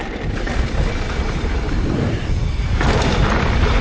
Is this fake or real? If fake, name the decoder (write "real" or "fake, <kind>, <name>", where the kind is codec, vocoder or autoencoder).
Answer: fake, vocoder, BigVGAN v2